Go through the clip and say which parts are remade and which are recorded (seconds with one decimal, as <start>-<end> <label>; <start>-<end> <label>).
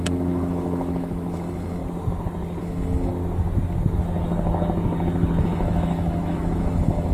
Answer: 0.0-1.8 remade; 1.8-2.6 recorded; 2.6-3.1 remade; 3.1-5.4 recorded; 5.4-7.1 remade